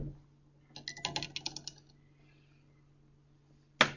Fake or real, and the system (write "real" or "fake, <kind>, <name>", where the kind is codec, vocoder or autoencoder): real